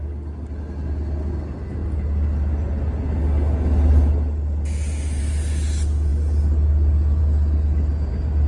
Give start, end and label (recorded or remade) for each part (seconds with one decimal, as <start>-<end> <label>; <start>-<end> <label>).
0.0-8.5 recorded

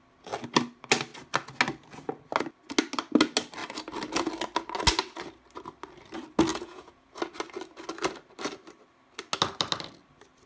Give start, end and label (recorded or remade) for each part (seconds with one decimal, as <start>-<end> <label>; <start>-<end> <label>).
0.0-6.5 recorded; 6.5-7.2 remade; 7.2-10.5 recorded

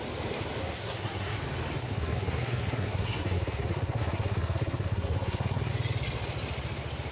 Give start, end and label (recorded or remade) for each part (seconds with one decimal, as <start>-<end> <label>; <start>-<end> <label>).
0.0-0.6 recorded; 0.6-1.4 remade; 1.4-1.8 recorded; 1.8-5.7 remade; 5.7-7.1 recorded

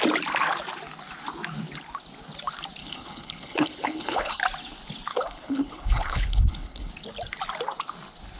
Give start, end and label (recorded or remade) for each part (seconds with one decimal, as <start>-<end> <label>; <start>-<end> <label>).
0.0-2.8 recorded; 2.8-4.4 remade; 4.4-5.1 recorded; 5.1-6.9 remade; 6.9-8.4 recorded

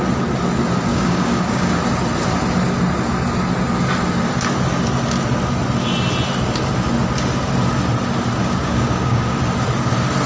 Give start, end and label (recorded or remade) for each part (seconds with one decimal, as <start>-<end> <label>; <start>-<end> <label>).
0.0-0.9 recorded; 0.9-1.7 remade; 1.7-8.4 recorded; 8.4-9.4 remade; 9.4-10.3 recorded

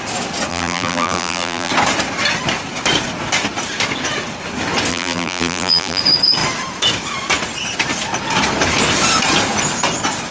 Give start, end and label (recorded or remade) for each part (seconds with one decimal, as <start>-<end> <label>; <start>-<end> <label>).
0.0-0.5 recorded; 0.5-1.7 remade; 1.7-4.9 recorded; 4.9-6.0 remade; 6.0-10.3 recorded

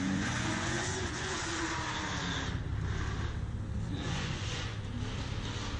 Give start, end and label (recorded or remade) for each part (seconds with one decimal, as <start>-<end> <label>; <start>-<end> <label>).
0.0-1.5 remade; 1.5-3.9 recorded; 3.9-4.7 remade; 4.7-5.8 recorded